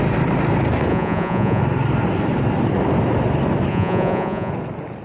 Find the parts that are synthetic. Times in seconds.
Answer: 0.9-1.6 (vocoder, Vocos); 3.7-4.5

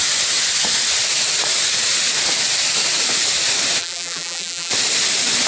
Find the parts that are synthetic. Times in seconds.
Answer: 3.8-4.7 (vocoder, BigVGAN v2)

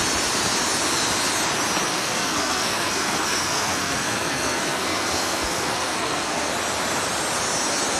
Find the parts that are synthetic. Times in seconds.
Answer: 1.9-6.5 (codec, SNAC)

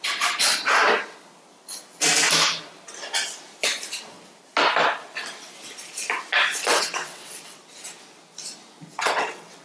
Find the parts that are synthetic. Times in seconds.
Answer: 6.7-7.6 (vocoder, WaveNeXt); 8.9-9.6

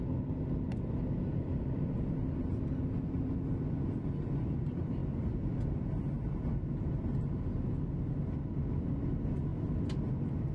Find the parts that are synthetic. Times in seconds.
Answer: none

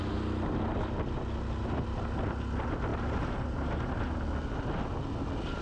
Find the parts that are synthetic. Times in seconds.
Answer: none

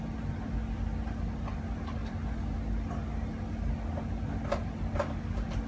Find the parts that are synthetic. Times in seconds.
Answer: none